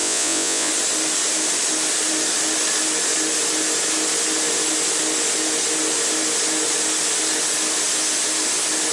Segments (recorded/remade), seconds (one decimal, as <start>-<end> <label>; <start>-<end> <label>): 0.0-0.7 remade; 0.7-8.9 recorded

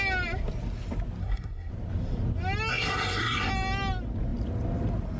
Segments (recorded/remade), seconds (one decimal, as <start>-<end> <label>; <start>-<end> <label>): 0.0-1.2 recorded; 1.2-1.7 remade; 1.7-2.7 recorded; 2.7-3.5 remade; 3.5-5.2 recorded

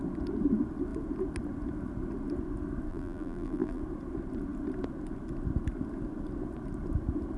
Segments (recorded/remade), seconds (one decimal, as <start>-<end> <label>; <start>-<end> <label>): 0.0-2.9 recorded; 2.9-3.8 remade; 3.8-7.4 recorded

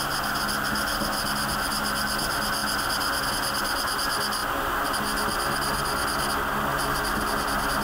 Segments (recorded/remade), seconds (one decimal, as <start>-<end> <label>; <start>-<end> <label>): 0.0-7.8 recorded

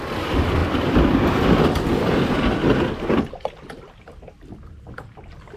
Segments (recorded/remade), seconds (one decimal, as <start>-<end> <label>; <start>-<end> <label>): 0.0-5.6 recorded

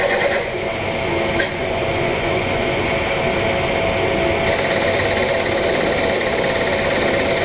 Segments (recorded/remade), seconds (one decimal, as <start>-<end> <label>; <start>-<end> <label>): 0.0-0.7 remade; 0.7-1.4 recorded; 1.4-2.9 remade; 2.9-7.4 recorded